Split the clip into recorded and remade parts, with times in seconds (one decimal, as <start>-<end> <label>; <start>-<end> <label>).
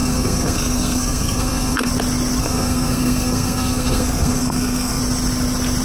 0.0-1.9 remade; 1.9-2.4 recorded; 2.4-5.0 remade; 5.0-5.8 recorded